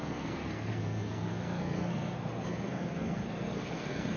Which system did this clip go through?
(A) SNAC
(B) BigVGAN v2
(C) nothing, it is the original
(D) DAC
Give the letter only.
A